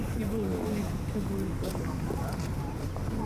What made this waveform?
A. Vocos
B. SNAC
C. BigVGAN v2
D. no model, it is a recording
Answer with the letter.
D